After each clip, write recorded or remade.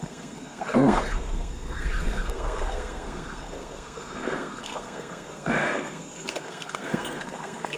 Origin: remade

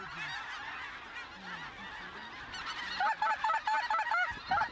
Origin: recorded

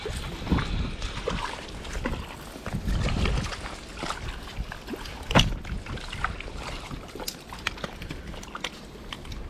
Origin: recorded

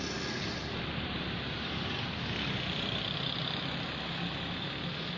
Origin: recorded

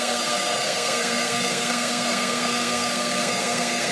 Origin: remade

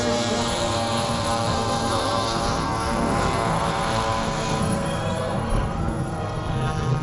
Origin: remade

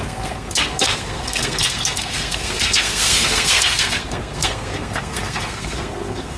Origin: remade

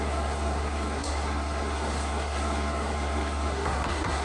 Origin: remade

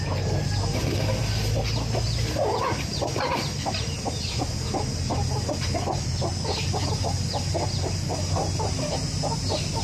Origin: recorded